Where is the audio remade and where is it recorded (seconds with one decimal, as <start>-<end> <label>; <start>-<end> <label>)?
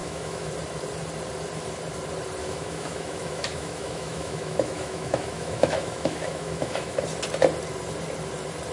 0.0-0.5 remade; 0.5-2.4 recorded; 2.4-7.0 remade; 7.0-8.7 recorded